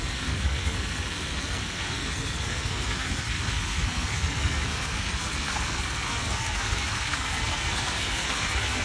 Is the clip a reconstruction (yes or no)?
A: yes